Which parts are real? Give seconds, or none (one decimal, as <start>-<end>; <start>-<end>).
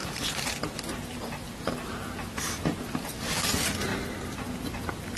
3.1-5.2